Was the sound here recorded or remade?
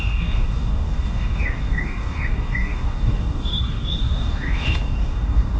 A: remade